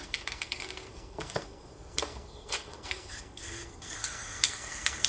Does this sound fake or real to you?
fake